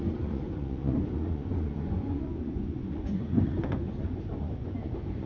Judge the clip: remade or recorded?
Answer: remade